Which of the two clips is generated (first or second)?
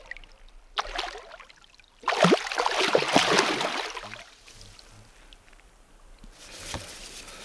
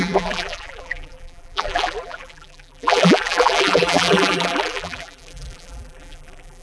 second